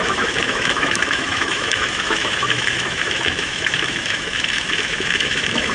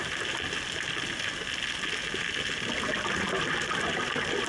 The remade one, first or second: first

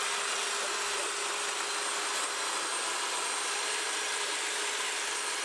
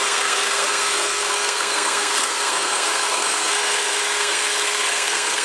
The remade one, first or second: second